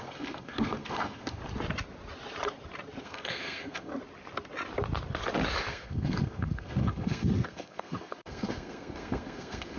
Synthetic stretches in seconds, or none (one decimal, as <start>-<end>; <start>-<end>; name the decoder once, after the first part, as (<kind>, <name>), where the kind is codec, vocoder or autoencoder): 0.0-1.4 (codec, SNAC); 3.0-3.9; 5.7-9.8